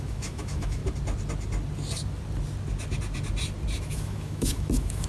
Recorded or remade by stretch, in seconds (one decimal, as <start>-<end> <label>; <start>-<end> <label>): 0.0-0.8 remade; 0.8-3.8 recorded; 3.8-5.1 remade